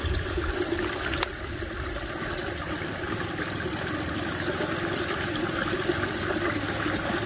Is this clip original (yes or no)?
yes